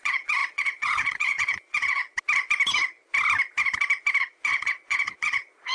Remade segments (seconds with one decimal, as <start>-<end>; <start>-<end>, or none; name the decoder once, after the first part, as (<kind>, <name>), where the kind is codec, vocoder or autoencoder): 0.0-2.0 (vocoder, Vocos); 4.2-5.7